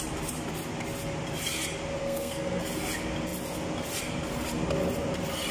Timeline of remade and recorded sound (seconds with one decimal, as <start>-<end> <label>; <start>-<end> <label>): 0.0-2.0 recorded; 2.0-2.6 remade; 2.6-5.5 recorded